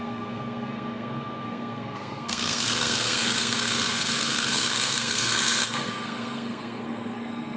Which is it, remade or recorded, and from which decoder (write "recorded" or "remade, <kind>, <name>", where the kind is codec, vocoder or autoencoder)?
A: remade, codec, SNAC